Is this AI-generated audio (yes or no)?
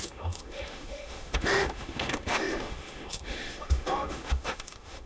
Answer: yes